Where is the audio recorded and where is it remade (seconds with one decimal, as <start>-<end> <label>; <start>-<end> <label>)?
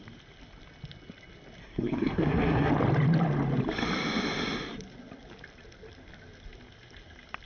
0.0-1.6 recorded; 1.6-2.7 remade; 2.7-7.5 recorded